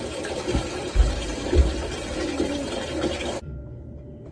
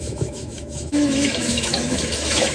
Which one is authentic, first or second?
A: first